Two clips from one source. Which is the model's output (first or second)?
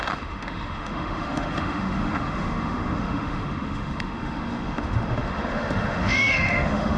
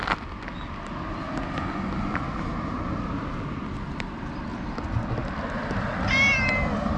first